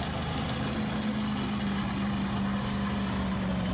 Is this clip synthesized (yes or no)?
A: no